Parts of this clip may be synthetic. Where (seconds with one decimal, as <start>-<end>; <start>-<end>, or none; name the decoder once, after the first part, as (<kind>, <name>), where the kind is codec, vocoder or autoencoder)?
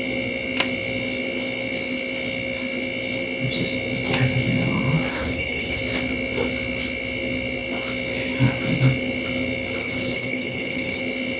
5.1-5.8 (codec, HILCodec); 9.8-11.0